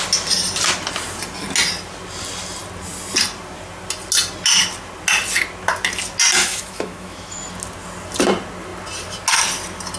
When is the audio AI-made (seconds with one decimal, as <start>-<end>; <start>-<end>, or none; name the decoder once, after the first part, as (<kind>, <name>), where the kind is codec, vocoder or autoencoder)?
6.4-7.4 (autoencoder, DAC-VAE)